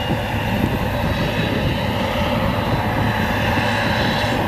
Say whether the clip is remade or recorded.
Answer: recorded